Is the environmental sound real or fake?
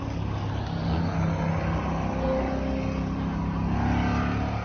real